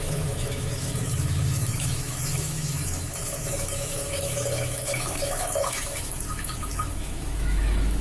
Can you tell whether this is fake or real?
fake